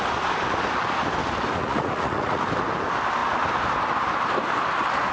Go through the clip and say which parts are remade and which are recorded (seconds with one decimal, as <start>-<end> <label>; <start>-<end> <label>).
0.0-1.6 recorded; 1.6-2.4 remade; 2.4-5.1 recorded